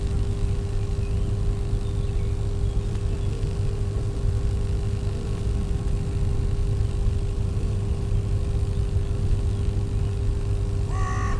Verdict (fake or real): real